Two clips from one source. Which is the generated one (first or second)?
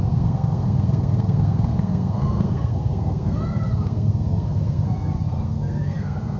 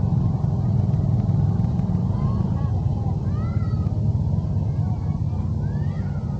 first